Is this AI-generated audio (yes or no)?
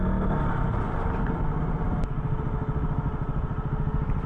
no